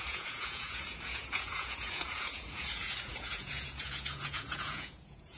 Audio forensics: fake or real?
fake